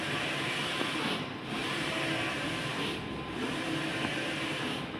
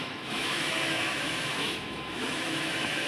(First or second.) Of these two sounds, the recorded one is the first